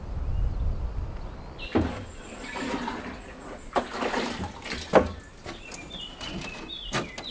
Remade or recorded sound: recorded